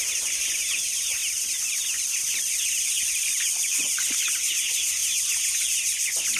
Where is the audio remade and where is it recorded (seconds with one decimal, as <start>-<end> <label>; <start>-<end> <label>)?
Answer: 0.0-6.4 recorded